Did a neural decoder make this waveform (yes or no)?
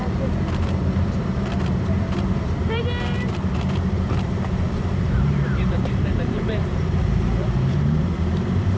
yes